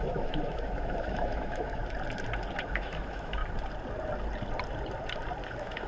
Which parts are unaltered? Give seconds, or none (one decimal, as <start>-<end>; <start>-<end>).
1.8-2.7; 3.4-5.5